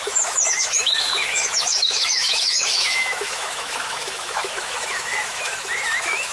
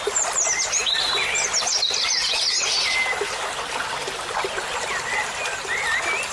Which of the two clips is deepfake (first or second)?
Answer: first